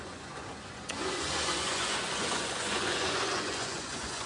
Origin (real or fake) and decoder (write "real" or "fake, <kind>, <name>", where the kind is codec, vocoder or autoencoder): fake, vocoder, Vocos